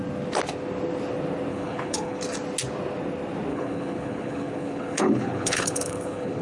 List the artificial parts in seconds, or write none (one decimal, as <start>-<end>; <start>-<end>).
1.5-2.2; 3.5-6.4